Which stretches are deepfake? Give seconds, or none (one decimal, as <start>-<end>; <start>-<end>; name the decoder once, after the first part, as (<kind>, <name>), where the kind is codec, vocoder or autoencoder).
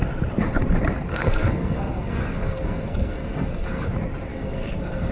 1.1-3.9 (codec, SNAC); 4.3-5.1